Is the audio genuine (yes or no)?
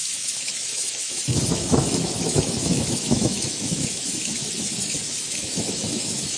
no